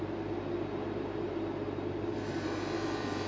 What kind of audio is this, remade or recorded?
remade